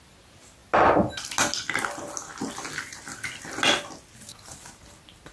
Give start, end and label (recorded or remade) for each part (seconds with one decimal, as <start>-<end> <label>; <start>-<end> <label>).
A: 0.0-5.3 recorded